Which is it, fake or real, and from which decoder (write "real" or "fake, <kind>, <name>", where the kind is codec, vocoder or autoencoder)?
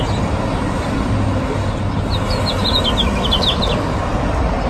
real